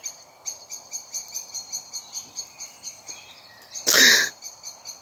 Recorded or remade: recorded